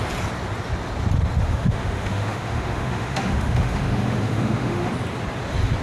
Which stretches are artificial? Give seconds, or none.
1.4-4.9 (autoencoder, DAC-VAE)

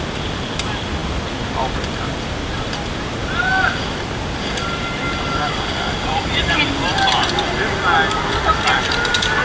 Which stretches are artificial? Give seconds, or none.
none

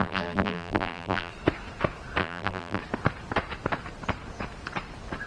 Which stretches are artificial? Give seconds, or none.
0.0-1.3 (vocoder, BigVGAN v2); 2.2-2.8

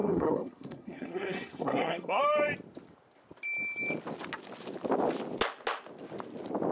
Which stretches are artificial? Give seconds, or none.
0.0-2.2 (codec, SNAC)

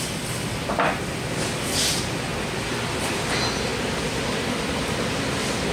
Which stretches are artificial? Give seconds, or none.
none

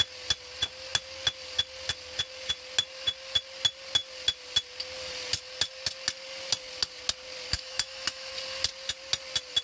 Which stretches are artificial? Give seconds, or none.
7.5-8.3 (autoencoder, DAC-VAE)

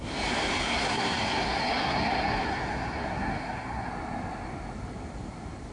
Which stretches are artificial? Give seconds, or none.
0.5-3.9 (codec, SNAC)